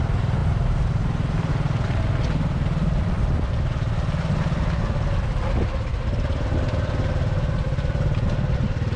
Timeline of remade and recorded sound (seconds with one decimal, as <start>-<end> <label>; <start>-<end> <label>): 0.0-9.0 recorded